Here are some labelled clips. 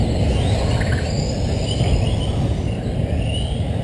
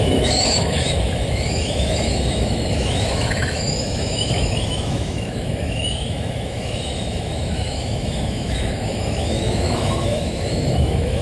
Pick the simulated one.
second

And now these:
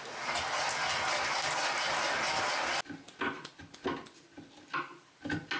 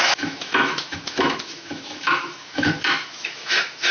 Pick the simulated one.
second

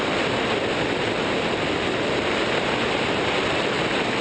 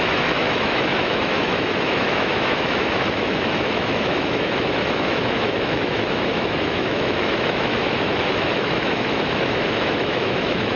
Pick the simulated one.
second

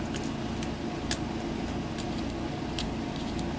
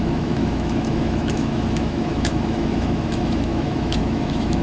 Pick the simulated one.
second